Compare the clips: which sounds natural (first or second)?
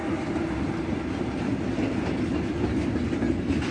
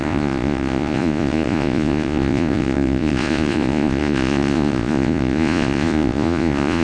first